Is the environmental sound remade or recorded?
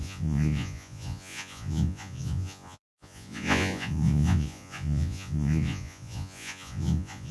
remade